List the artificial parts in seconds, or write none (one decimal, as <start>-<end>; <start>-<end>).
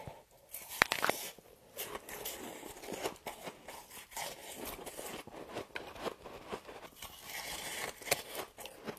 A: 4.4-7.3